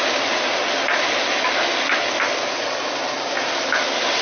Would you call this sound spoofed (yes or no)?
no